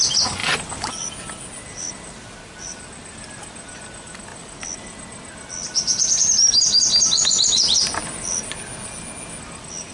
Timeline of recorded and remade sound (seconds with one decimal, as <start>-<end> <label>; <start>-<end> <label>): 0.0-0.4 recorded; 0.4-0.9 remade; 0.9-9.9 recorded